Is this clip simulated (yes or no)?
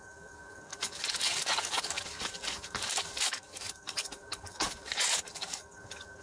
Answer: yes